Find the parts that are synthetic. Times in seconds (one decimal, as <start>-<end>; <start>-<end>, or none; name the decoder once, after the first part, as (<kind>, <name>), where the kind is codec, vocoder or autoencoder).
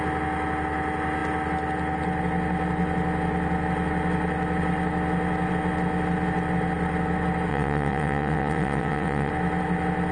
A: 7.5-9.3 (vocoder, WaveNeXt)